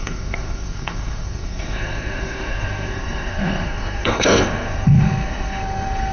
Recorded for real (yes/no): no